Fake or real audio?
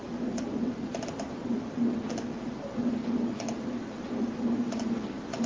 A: fake